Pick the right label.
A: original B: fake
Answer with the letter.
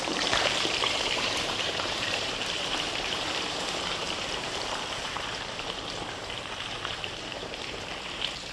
B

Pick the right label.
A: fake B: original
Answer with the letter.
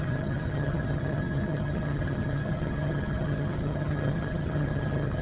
A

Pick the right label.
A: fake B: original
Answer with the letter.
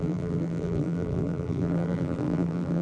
A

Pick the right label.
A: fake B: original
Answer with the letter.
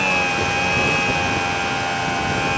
B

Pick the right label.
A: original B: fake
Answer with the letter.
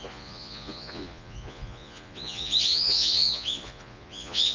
B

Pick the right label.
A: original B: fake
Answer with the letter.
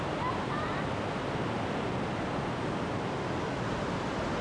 A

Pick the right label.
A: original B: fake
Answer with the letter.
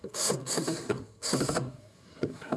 B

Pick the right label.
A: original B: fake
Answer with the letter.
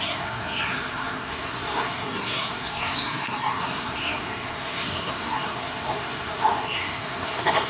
B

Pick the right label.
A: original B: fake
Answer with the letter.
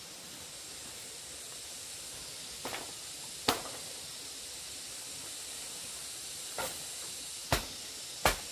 A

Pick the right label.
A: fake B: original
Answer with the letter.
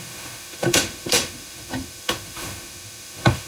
A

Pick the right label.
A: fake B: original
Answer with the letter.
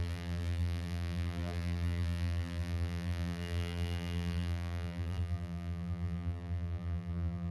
A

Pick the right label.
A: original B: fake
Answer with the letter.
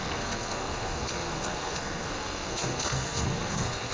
B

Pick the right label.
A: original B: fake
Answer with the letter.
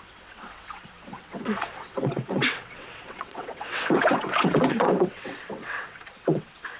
B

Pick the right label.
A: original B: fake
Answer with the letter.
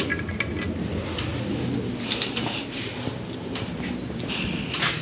A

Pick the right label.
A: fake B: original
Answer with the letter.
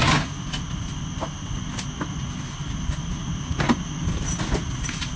B